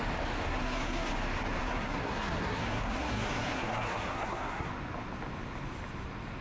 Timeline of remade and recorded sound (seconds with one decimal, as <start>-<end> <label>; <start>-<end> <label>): 0.0-0.5 recorded; 0.5-1.1 remade; 1.1-1.6 recorded; 1.6-4.7 remade; 4.7-6.4 recorded